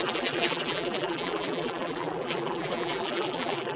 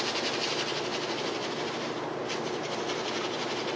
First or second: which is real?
second